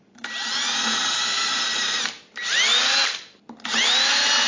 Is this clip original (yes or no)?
yes